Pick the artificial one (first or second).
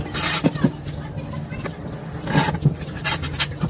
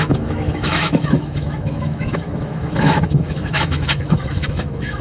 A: second